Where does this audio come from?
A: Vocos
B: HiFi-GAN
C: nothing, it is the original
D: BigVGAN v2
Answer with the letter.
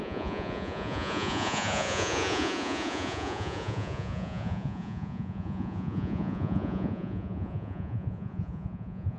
A